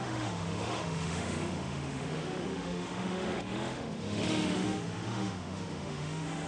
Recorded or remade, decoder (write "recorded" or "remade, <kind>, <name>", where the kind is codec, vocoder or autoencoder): remade, autoencoder, DAC-VAE